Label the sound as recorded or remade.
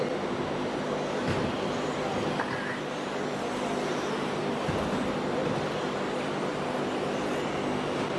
recorded